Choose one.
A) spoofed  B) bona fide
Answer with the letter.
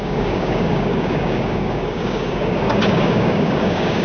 A